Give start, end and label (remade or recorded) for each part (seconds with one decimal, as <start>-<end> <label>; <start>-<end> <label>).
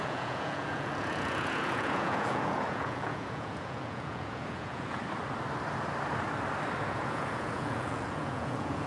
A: 0.0-5.0 remade; 5.0-6.8 recorded; 6.8-8.9 remade